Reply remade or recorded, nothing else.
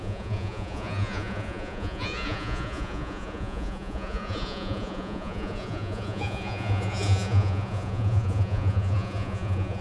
remade